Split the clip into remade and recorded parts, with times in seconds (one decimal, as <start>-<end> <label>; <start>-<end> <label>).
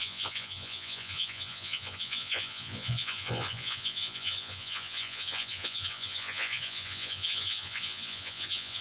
0.0-8.8 remade